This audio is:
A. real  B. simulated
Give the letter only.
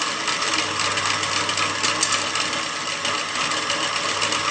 A